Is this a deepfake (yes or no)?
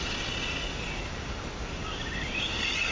no